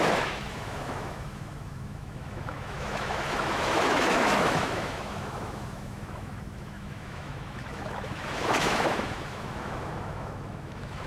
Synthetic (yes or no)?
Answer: yes